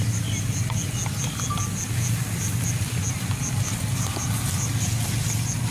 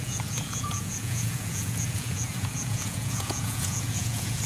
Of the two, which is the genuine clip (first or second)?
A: first